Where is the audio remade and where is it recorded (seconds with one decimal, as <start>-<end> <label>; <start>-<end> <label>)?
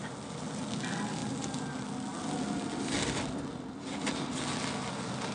0.0-5.3 recorded